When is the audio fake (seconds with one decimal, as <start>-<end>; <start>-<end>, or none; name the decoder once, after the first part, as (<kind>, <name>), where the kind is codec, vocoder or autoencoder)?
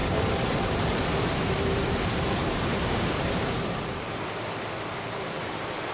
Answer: 0.0-5.9 (vocoder, BigVGAN v2)